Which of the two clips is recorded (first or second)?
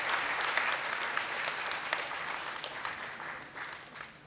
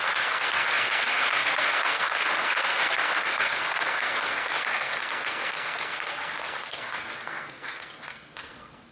first